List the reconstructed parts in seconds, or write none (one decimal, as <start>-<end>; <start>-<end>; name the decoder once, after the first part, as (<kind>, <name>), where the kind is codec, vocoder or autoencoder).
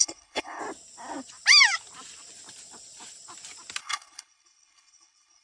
0.0-0.6 (codec, HILCodec); 3.8-5.4